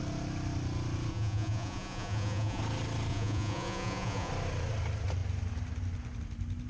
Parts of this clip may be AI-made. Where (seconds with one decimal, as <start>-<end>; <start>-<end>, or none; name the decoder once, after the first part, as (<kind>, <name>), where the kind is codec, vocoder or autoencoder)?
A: 1.1-2.6 (vocoder, Vocos); 3.1-4.3